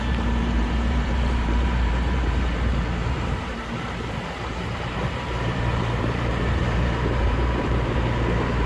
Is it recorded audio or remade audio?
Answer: remade